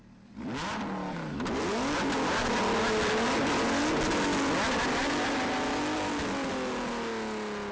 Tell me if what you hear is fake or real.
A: real